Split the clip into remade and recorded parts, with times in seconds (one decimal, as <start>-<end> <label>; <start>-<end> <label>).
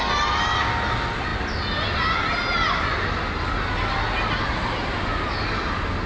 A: 0.0-6.1 recorded